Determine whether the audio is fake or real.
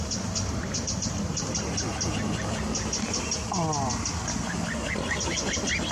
real